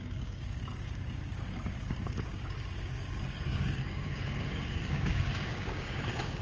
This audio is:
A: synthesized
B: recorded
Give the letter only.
A